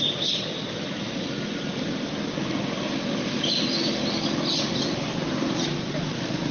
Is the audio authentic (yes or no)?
yes